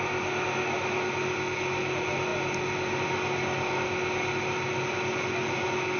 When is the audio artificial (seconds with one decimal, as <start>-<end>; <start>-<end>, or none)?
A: none